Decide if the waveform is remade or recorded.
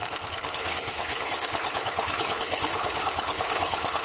remade